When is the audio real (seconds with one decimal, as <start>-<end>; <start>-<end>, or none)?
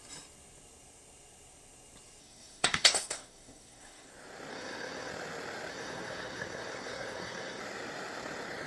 0.0-2.2; 4.1-4.5; 5.1-5.7; 7.6-8.7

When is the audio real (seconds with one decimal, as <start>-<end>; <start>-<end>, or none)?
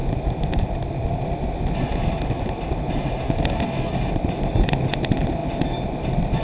0.0-6.4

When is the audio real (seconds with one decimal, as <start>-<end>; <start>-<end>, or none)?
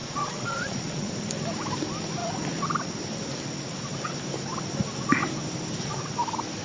1.1-6.6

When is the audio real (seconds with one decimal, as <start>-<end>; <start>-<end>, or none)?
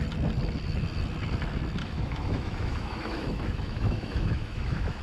0.0-1.8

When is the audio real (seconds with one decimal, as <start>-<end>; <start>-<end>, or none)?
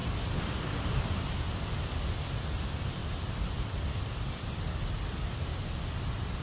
1.1-3.0; 4.6-5.5; 6.0-6.4